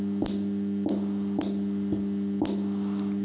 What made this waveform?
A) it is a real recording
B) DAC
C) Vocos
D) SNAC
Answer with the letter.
A